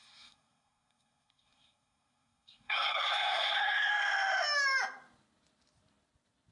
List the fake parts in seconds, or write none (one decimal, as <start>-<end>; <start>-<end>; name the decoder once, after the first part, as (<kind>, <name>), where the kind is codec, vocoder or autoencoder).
0.0-3.9 (codec, SNAC)